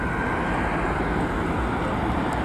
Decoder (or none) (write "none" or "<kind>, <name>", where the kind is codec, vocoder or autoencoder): none